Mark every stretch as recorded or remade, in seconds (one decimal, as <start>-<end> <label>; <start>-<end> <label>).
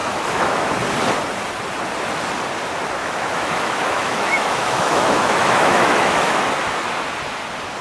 0.0-0.7 remade; 0.7-3.0 recorded; 3.0-6.4 remade; 6.4-7.8 recorded